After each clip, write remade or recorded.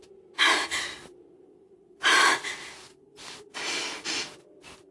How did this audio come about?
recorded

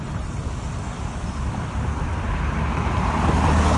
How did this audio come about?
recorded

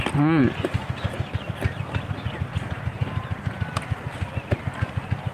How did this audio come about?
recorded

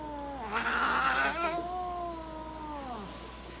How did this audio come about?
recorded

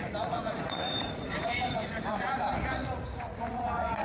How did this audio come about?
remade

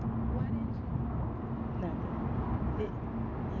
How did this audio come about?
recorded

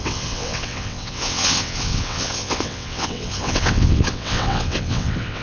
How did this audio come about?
remade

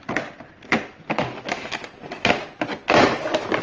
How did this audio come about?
recorded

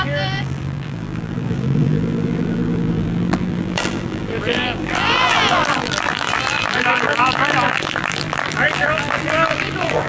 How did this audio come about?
remade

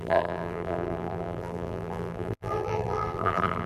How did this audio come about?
remade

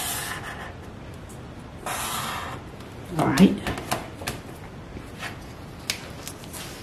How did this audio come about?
recorded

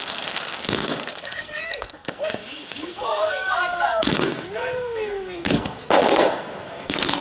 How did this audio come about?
remade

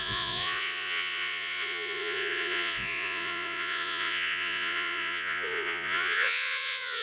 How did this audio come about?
remade